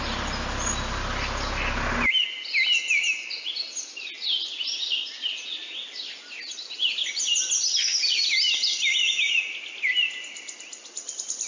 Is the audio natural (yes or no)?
yes